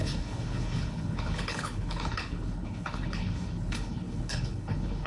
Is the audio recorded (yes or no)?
no